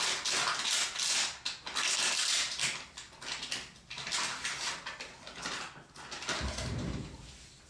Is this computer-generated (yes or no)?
no